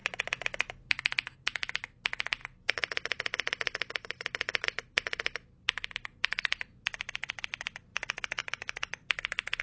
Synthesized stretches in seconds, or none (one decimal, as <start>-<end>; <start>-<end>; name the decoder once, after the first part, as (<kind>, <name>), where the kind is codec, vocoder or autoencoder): 0.0-0.9 (vocoder, BigVGAN v2); 2.4-7.5; 8.4-9.6